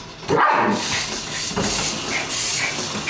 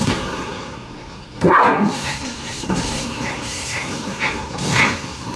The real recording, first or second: first